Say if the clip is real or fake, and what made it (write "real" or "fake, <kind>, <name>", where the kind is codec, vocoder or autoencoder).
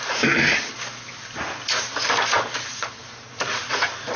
real